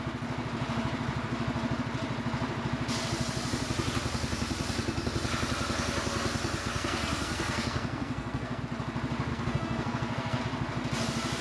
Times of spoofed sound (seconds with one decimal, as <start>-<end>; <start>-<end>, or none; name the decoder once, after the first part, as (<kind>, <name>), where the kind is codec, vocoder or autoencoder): 6.6-8.6 (codec, SNAC); 9.3-10.4